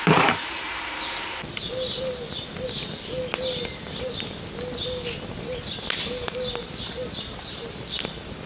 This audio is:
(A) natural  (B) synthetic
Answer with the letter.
A